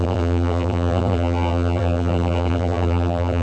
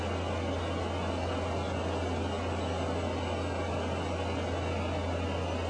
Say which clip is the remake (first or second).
first